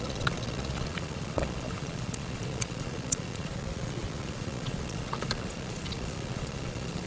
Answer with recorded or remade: remade